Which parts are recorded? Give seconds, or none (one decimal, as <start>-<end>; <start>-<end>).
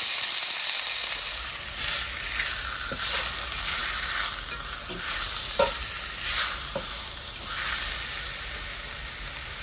0.0-9.6